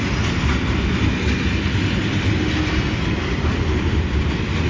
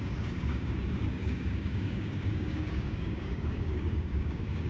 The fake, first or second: second